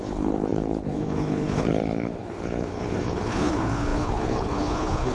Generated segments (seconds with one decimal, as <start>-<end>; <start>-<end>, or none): 0.0-5.1